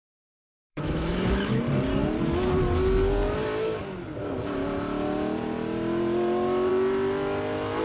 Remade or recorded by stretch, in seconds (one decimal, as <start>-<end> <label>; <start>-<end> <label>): 0.0-0.6 recorded; 0.6-1.6 remade; 1.6-7.8 recorded

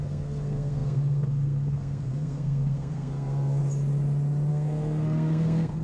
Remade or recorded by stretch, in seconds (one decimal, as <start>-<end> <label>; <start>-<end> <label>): 0.0-3.6 remade; 3.6-4.5 recorded; 4.5-5.8 remade

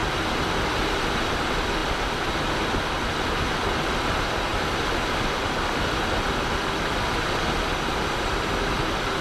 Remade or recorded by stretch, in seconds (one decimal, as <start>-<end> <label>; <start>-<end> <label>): 0.0-9.2 recorded

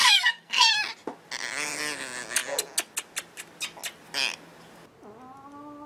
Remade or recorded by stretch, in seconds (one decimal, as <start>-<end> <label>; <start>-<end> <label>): 0.0-0.7 remade; 0.7-5.9 recorded

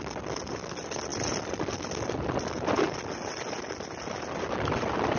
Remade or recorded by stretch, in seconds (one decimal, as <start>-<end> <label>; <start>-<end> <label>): 0.0-5.2 recorded

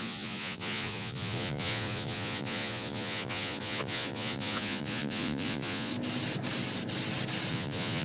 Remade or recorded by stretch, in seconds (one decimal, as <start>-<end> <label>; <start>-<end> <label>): 0.0-5.9 remade; 5.9-7.5 recorded; 7.5-8.0 remade